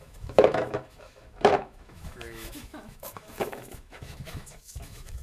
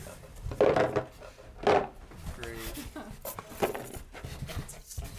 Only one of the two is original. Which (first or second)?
second